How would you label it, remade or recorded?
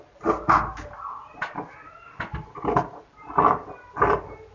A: recorded